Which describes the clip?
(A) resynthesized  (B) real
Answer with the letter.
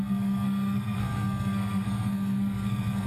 A